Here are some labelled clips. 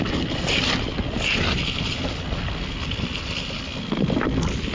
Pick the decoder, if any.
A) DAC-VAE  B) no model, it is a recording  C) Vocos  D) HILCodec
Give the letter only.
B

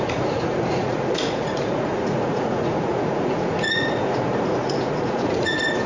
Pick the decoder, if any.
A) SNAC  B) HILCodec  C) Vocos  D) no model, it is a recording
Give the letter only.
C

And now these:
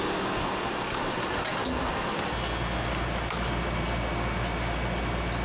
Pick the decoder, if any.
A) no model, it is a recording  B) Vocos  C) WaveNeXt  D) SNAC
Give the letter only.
A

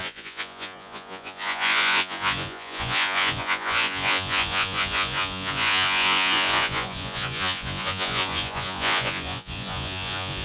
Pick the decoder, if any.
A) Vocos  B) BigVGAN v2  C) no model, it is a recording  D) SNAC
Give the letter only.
A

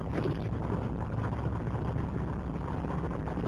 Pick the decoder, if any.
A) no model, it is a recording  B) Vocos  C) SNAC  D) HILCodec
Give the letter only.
A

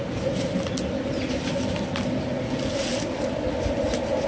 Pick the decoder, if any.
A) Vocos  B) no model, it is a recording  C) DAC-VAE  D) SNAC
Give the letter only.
B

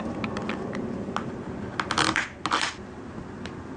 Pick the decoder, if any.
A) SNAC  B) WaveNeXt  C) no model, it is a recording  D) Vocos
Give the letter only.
C